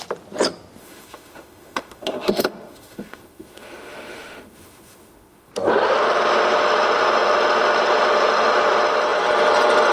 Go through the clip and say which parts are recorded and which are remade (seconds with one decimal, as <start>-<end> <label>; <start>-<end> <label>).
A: 0.0-0.8 recorded; 0.8-5.5 remade; 5.5-9.9 recorded